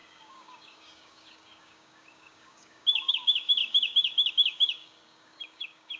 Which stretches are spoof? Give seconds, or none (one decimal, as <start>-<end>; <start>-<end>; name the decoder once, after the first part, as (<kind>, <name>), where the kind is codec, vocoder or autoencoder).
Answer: 0.0-6.0 (codec, DAC)